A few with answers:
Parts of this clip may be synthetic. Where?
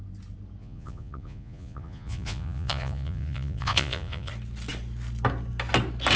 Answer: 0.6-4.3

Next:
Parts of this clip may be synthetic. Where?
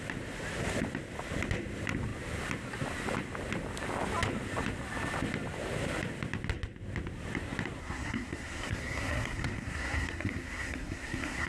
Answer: 7.8-11.5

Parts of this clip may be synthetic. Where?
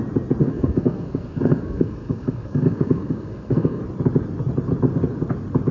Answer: 0.4-3.8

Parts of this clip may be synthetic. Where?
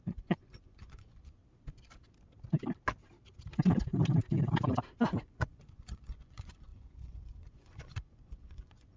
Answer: 0.0-1.4; 5.2-9.0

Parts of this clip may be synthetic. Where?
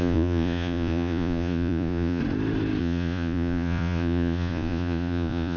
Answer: 0.0-2.2; 2.8-5.6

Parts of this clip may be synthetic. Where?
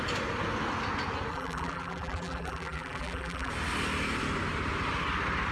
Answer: 1.3-3.5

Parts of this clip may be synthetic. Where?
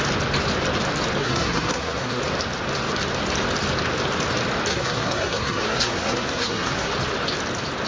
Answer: 1.2-2.2; 4.7-6.9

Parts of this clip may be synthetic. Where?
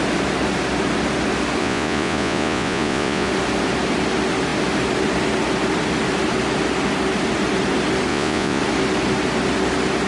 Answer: 1.6-3.3; 8.1-8.6